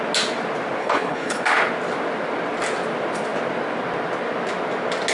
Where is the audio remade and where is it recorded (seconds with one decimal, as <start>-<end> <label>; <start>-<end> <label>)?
0.0-0.8 recorded; 0.8-1.4 remade; 1.4-5.1 recorded